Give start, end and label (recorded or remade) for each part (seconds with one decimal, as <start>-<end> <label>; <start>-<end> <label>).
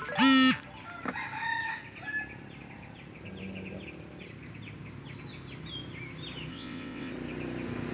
0.0-6.5 recorded; 6.5-7.1 remade; 7.1-7.9 recorded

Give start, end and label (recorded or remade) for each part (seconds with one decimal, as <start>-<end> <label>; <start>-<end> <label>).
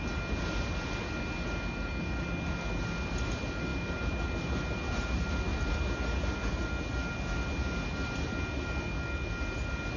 0.0-10.0 recorded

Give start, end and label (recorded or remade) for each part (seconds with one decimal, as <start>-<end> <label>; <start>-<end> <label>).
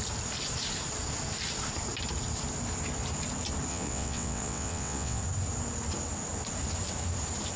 0.0-3.7 recorded; 3.7-5.2 remade; 5.2-7.6 recorded